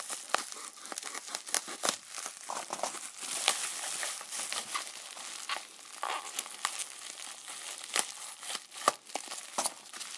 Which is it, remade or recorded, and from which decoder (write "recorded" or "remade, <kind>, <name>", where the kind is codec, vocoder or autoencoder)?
recorded